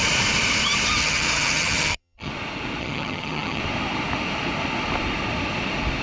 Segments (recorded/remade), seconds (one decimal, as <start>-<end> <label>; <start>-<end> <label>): 0.0-1.0 recorded; 1.0-2.3 remade; 2.3-2.8 recorded; 2.8-3.6 remade; 3.6-6.0 recorded